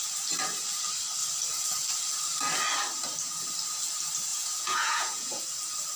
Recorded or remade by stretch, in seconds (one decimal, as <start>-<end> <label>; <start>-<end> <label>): 0.0-4.3 recorded; 4.3-5.4 remade; 5.4-6.0 recorded